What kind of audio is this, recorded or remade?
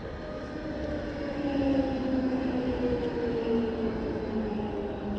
recorded